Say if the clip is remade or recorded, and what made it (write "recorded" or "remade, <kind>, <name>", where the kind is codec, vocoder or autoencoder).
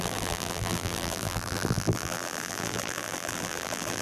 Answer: remade, vocoder, BigVGAN v2